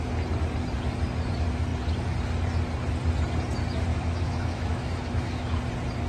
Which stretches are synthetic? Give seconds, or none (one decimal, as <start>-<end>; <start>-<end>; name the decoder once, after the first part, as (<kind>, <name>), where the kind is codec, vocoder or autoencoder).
3.9-5.6 (autoencoder, DAC-VAE)

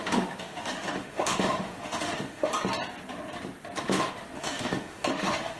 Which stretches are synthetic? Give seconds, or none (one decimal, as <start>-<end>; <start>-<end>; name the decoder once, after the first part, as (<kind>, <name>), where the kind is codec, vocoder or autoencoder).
0.0-2.5 (autoencoder, DAC-VAE); 3.8-5.6

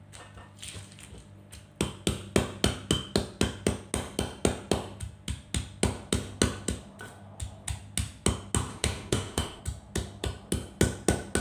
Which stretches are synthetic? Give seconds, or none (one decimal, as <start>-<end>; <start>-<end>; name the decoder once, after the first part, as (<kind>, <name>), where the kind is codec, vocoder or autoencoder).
8.7-9.6 (autoencoder, DAC-VAE)

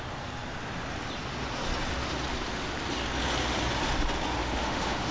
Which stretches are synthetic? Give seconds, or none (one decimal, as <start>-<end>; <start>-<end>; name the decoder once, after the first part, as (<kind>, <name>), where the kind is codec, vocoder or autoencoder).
4.4-5.1 (autoencoder, DAC-VAE)

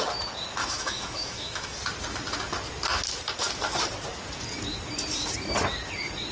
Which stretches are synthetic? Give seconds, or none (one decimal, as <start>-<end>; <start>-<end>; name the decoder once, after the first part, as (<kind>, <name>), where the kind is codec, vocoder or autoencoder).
0.6-1.8 (autoencoder, DAC-VAE)

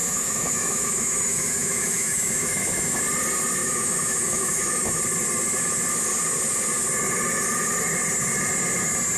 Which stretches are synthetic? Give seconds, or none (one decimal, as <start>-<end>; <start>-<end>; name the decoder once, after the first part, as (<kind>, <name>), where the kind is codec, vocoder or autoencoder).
0.0-3.0 (autoencoder, DAC-VAE); 3.6-5.0